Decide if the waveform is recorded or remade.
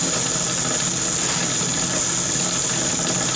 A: recorded